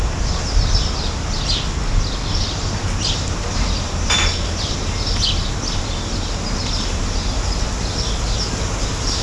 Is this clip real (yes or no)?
yes